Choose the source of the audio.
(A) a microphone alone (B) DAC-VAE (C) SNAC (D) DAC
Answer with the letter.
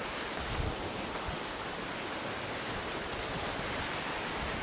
A